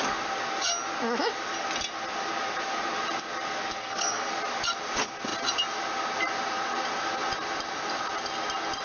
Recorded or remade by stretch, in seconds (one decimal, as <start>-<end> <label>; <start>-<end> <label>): 0.0-3.8 recorded; 3.8-4.3 remade; 4.3-8.8 recorded